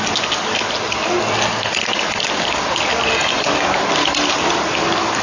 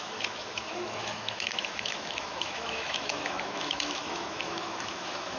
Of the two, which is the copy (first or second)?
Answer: second